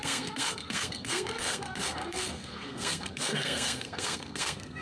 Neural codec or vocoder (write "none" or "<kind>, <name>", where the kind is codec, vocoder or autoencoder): codec, SNAC